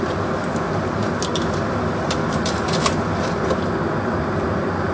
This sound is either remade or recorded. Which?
recorded